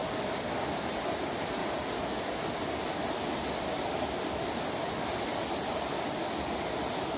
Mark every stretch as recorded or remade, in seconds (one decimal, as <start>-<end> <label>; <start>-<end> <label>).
0.0-7.2 recorded